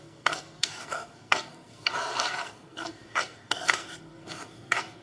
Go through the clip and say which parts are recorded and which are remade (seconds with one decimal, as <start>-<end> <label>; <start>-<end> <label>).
0.0-5.0 remade